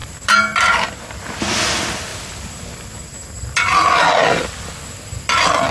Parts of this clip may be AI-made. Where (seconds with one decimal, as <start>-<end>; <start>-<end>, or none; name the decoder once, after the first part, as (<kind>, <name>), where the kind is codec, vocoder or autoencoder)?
0.0-1.0 (vocoder, BigVGAN v2)